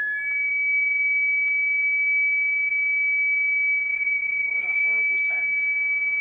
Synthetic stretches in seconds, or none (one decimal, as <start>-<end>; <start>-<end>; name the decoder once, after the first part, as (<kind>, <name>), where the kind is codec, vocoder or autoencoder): 3.9-4.8 (vocoder, Vocos)